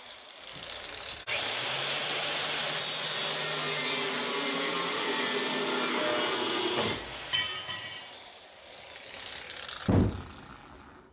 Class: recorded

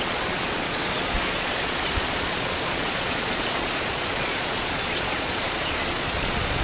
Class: remade